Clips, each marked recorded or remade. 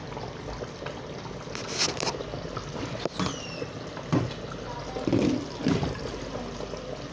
recorded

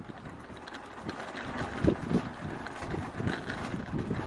recorded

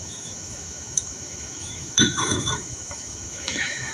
remade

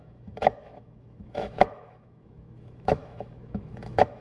remade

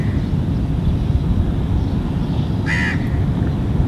recorded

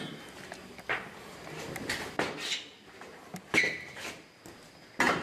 recorded